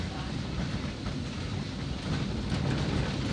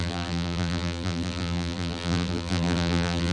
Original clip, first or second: first